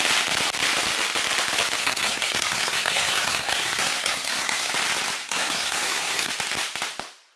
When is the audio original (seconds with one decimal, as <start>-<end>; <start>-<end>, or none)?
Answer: 0.0-1.8; 4.7-5.2; 6.3-7.4